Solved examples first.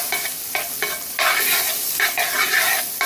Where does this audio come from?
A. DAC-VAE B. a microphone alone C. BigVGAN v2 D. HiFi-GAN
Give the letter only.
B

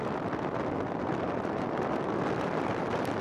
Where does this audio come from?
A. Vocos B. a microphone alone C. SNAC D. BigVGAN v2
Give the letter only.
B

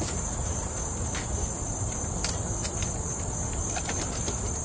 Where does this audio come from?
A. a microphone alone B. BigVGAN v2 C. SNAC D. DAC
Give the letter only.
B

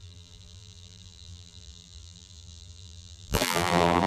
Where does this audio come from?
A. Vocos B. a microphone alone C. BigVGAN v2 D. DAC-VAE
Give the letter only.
C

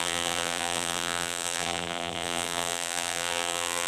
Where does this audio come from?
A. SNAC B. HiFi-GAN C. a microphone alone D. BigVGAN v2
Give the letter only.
D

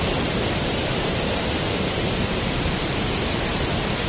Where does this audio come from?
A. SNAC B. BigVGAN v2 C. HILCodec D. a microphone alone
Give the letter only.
B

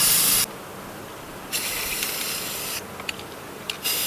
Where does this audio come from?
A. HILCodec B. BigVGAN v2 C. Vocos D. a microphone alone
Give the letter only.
B